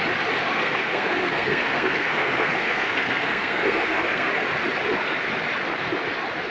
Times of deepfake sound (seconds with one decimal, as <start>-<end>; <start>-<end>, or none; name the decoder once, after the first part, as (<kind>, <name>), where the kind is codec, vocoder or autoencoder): 0.4-4.3 (codec, SNAC)